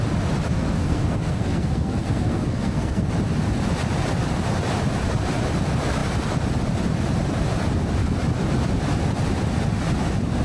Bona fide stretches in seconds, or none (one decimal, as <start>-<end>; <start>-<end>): 0.0-0.5; 3.1-10.4